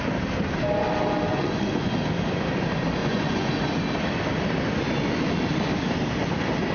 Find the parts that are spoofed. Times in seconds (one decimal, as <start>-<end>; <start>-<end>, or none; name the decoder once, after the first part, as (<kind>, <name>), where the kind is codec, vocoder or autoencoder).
1.3-1.9 (vocoder, Vocos); 3.0-3.5